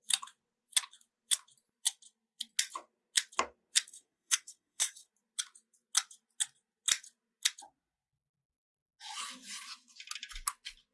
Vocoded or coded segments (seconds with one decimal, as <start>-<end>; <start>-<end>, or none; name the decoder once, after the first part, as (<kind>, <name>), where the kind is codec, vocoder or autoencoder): 3.9-5.1 (codec, SNAC)